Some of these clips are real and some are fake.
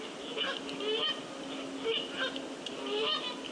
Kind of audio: real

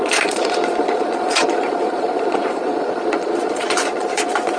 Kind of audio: fake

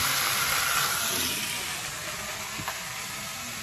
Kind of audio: real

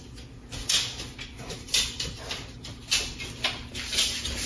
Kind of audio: real